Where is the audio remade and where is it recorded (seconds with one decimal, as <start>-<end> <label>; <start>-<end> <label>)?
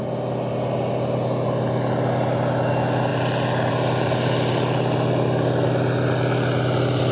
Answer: 0.0-7.1 recorded